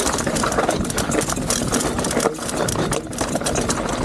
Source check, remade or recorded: recorded